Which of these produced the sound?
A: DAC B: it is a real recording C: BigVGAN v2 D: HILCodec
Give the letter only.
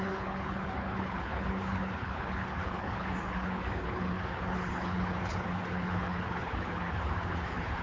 D